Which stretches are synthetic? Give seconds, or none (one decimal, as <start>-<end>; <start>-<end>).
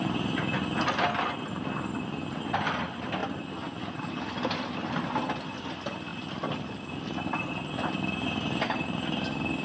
none